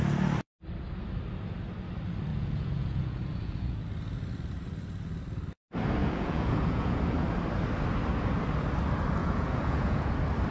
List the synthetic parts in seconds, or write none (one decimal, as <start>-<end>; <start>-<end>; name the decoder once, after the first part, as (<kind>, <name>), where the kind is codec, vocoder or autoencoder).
2.3-3.8 (vocoder, Vocos); 6.0-7.0; 9.2-10.1